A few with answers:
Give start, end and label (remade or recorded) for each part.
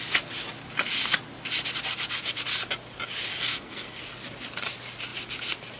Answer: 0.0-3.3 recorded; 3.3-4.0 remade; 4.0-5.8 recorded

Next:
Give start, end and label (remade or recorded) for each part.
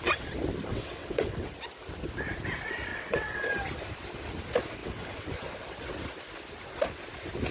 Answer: 0.0-0.7 recorded; 0.7-1.5 remade; 1.5-2.9 recorded; 2.9-3.5 remade; 3.5-4.8 recorded; 4.8-5.3 remade; 5.3-7.5 recorded